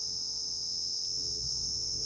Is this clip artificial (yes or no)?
yes